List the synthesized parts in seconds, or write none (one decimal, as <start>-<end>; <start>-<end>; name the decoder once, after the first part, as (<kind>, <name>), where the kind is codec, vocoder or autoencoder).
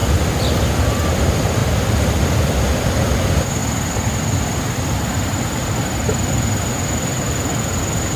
1.6-2.2 (vocoder, BigVGAN v2)